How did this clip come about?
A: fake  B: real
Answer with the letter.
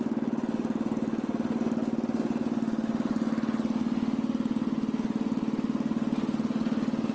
B